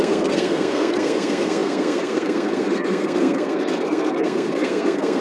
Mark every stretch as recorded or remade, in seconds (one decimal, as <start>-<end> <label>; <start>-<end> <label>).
0.0-5.2 remade